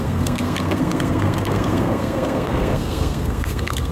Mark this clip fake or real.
fake